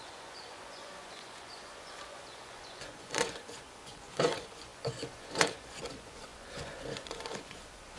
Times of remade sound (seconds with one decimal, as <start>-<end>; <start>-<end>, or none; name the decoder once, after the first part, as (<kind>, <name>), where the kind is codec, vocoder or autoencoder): 0.0-8.0 (vocoder, Vocos)